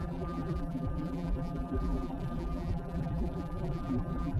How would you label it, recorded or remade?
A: remade